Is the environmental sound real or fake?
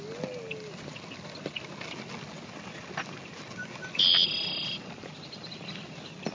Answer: real